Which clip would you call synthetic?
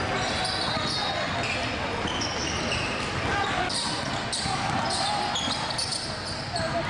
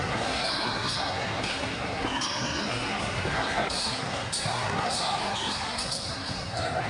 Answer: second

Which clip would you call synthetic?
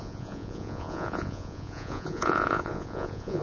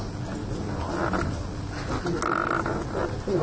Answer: first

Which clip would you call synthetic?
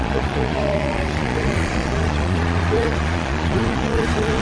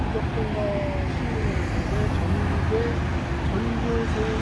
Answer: first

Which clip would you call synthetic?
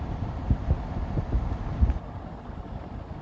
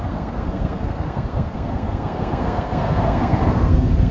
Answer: second